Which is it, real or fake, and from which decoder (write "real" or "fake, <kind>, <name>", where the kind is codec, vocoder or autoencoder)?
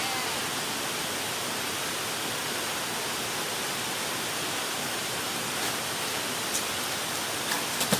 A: real